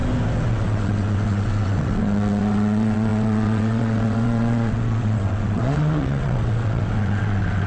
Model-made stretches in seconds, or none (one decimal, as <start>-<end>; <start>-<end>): 0.5-7.7